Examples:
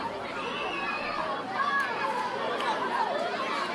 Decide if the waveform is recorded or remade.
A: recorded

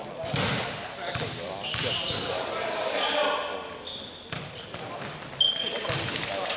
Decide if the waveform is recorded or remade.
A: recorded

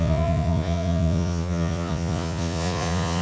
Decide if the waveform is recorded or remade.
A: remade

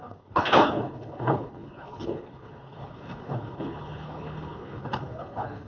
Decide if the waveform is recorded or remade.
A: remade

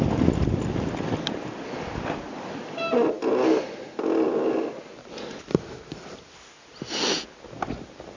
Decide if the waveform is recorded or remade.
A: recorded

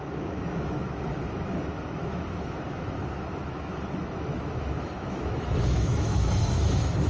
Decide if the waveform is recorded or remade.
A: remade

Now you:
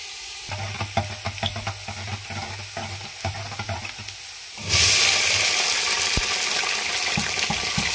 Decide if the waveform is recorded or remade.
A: recorded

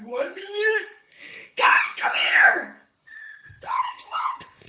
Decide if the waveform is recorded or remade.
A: remade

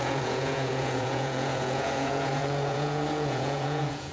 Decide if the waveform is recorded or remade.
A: remade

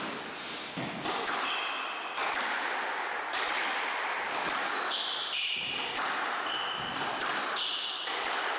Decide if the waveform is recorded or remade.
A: recorded